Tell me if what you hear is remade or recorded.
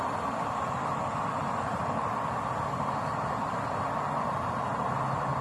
recorded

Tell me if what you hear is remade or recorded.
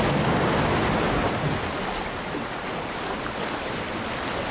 recorded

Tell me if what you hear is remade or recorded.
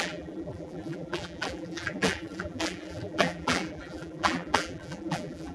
remade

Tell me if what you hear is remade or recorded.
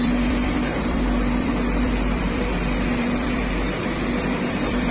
remade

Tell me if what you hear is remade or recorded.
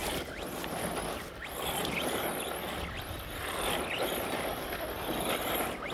recorded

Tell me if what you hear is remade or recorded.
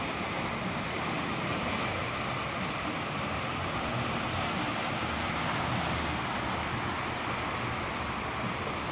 recorded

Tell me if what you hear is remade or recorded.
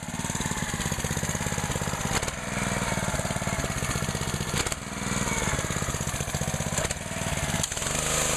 recorded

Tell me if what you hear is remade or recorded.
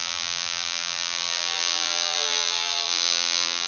remade